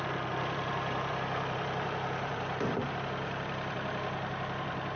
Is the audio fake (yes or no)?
yes